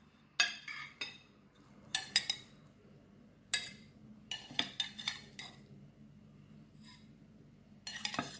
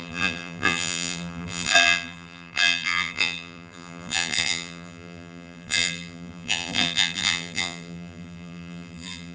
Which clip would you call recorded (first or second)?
first